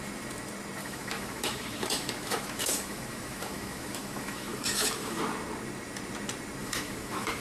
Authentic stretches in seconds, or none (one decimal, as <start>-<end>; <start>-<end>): 0.0-0.8; 5.2-6.6